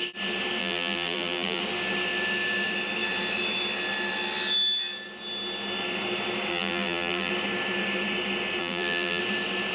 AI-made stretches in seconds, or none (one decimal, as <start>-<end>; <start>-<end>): 0.6-1.6; 6.5-7.3; 8.6-9.2